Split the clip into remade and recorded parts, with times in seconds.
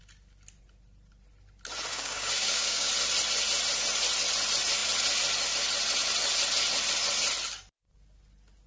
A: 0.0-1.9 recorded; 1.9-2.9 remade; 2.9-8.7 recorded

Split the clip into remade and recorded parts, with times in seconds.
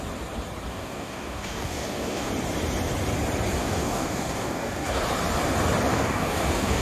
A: 0.0-0.7 recorded; 0.7-2.3 remade; 2.3-3.6 recorded; 3.6-5.0 remade; 5.0-5.9 recorded; 5.9-6.8 remade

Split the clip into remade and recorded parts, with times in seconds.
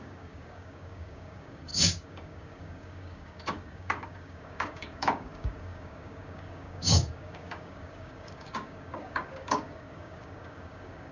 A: 0.0-11.1 remade